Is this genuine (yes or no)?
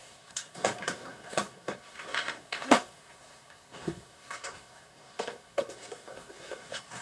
no